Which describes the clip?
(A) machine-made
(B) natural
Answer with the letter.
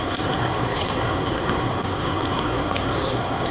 A